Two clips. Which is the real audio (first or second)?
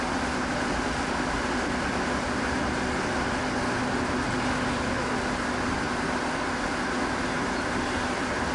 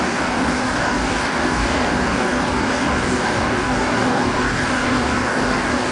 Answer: first